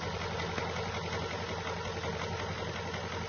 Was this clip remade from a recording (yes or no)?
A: no